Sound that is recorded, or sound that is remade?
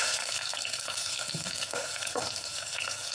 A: remade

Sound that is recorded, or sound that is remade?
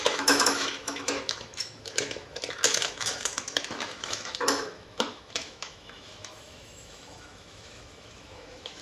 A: remade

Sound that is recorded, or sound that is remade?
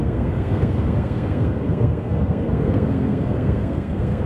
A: remade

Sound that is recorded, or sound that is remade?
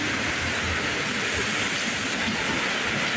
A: recorded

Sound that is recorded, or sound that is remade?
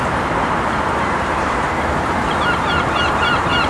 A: remade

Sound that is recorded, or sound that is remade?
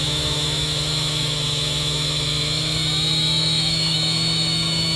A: remade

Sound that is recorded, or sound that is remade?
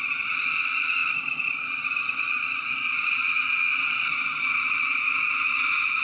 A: remade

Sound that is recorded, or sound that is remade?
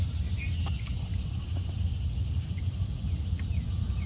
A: recorded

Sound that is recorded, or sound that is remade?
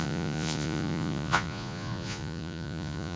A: remade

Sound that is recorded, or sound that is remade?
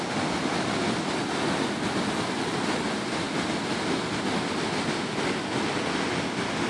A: recorded